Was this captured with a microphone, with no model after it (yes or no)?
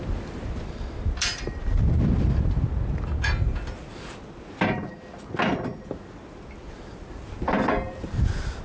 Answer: yes